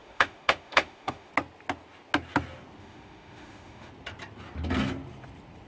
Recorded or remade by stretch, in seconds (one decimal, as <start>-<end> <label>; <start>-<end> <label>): 0.0-1.3 remade; 1.3-2.8 recorded; 2.8-3.9 remade; 3.9-5.7 recorded